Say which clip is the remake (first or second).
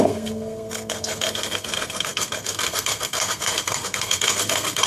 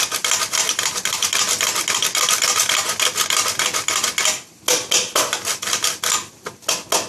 first